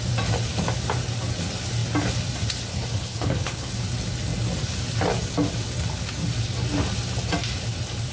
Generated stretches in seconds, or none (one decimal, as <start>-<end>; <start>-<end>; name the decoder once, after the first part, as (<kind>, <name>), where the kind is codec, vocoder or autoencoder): 2.7-3.7 (codec, HILCodec)